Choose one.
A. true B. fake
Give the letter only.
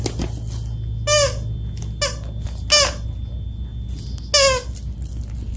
A